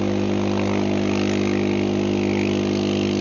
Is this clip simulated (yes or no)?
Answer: no